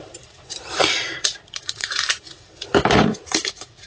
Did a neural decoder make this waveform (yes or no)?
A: yes